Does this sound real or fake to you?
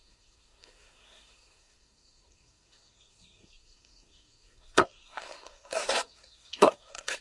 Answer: fake